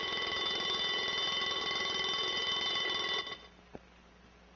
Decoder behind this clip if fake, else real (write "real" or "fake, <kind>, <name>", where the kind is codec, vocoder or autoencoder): real